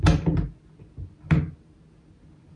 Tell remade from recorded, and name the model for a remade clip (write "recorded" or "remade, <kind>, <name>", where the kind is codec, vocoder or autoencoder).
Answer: recorded